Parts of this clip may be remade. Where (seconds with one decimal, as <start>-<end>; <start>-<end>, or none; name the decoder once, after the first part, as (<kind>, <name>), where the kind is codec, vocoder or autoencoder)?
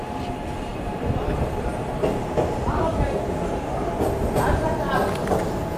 none